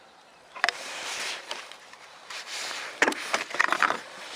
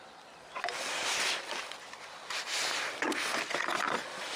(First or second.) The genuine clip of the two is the second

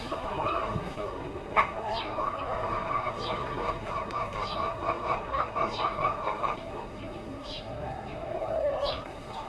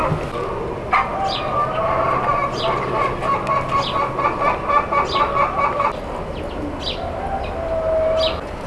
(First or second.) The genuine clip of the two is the second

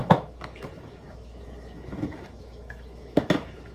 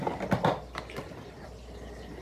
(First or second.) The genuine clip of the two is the second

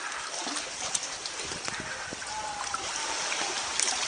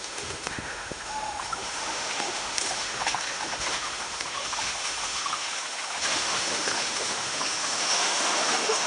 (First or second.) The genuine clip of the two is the first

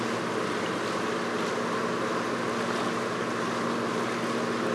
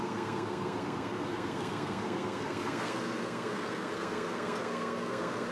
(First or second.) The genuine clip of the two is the first